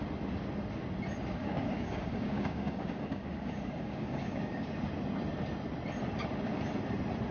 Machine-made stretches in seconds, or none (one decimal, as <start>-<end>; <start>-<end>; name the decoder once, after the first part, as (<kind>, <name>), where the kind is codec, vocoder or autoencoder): 1.4-4.7 (codec, DAC)